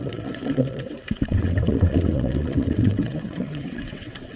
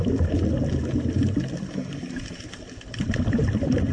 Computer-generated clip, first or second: first